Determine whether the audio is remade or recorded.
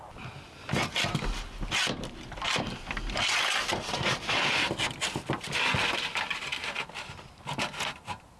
recorded